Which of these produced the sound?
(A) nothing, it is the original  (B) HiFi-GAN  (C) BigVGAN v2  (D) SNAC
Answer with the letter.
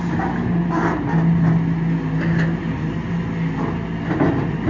A